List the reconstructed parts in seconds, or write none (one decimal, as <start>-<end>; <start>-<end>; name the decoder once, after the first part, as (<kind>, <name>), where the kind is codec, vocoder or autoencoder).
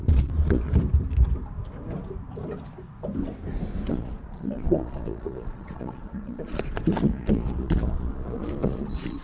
0.0-0.7 (vocoder, Vocos); 3.9-9.2